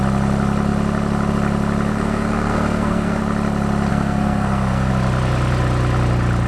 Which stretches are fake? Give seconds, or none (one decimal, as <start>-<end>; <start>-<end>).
1.9-3.2; 3.9-4.9